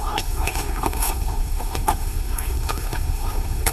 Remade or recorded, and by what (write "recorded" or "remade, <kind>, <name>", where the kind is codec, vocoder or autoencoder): remade, codec, SNAC